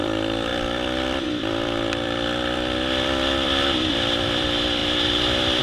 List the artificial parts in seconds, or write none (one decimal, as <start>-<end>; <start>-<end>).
0.0-4.8